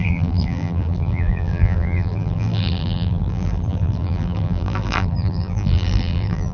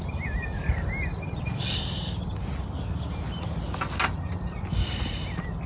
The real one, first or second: second